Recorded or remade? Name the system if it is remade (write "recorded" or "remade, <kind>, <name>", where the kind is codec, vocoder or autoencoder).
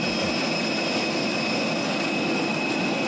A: recorded